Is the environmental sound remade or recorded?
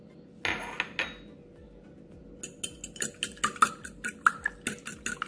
recorded